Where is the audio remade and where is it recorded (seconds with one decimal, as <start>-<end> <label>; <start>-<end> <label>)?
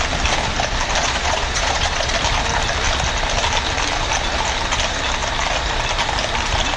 0.0-1.0 recorded; 1.0-2.1 remade; 2.1-6.8 recorded